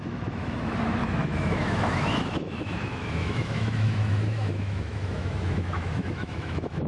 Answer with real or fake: fake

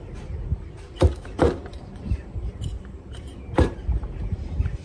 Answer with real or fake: fake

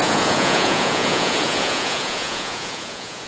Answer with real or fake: fake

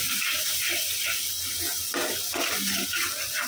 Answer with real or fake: real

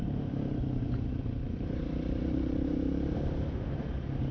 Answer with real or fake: fake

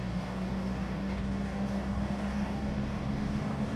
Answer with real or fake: fake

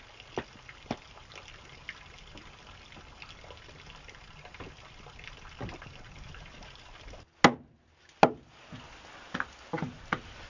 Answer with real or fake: real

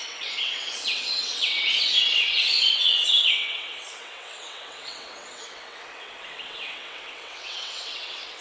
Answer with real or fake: fake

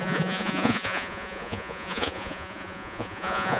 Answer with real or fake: fake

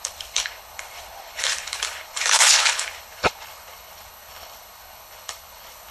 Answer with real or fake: fake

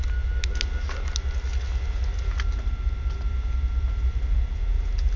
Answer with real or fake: real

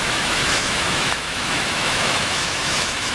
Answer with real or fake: fake